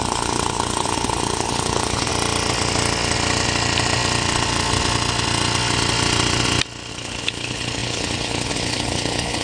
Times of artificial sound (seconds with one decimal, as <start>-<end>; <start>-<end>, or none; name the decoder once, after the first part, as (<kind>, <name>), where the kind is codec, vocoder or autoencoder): 0.0-2.1 (codec, HILCodec); 6.9-9.4